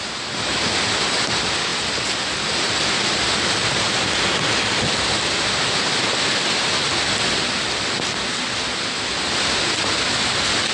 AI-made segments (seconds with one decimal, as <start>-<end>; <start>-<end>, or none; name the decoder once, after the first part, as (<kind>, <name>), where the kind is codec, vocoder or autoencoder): none